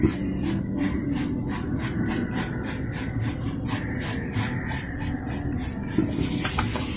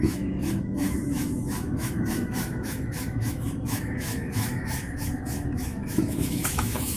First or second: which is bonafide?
first